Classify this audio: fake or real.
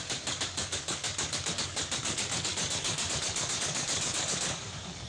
fake